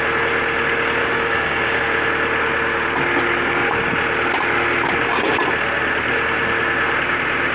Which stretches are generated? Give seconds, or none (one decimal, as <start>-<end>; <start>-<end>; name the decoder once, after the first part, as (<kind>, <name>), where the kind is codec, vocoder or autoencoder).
1.0-1.8 (codec, DAC)

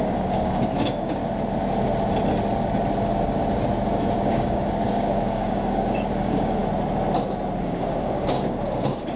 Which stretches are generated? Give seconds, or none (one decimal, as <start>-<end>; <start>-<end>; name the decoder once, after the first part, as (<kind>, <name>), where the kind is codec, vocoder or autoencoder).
0.0-1.2 (codec, DAC); 4.2-6.6; 7.6-9.2

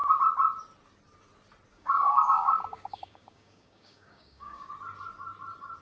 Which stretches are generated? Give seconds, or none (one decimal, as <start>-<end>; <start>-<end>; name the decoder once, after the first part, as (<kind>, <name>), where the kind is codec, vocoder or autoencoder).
1.7-4.7 (codec, DAC)

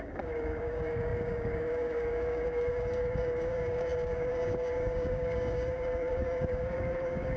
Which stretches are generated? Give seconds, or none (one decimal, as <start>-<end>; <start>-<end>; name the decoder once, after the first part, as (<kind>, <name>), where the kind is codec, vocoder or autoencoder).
0.0-7.4 (codec, DAC)